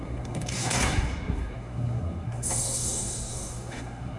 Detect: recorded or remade remade